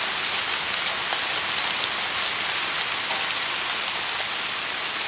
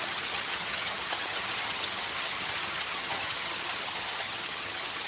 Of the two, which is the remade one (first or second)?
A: second